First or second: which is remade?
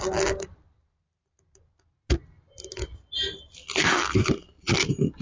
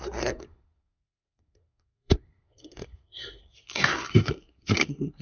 second